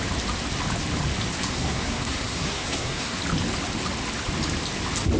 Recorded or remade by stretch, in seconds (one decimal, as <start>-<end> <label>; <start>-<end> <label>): 0.0-1.5 recorded; 1.5-3.2 remade; 3.2-5.2 recorded